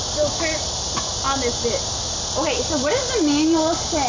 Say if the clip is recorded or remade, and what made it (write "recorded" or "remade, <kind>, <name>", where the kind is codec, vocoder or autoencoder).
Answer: recorded